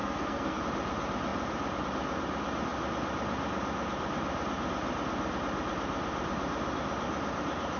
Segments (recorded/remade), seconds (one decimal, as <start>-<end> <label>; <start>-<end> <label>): 0.0-0.6 remade; 0.6-7.8 recorded